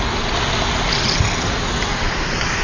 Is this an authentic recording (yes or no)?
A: yes